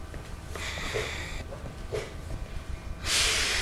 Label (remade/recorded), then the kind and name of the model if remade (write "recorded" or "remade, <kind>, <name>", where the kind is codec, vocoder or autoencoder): recorded